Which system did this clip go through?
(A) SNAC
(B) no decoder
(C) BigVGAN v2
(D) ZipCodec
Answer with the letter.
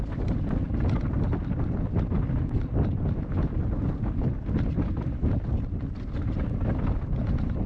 B